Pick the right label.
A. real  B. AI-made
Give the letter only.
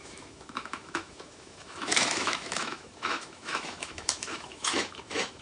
B